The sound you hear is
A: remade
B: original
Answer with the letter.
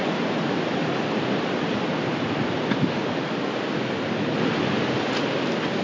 B